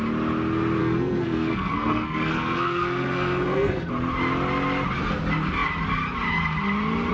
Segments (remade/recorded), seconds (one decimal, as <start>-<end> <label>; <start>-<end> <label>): 0.0-0.8 recorded; 0.8-3.9 remade; 3.9-7.1 recorded